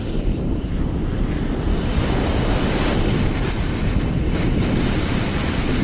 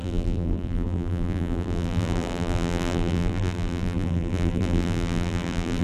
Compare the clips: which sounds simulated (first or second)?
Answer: second